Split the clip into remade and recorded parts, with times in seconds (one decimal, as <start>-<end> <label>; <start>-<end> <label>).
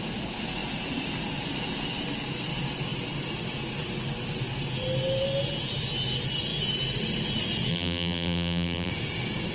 0.0-7.7 recorded; 7.7-8.9 remade; 8.9-9.5 recorded